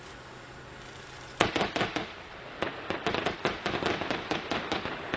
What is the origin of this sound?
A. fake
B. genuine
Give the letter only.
B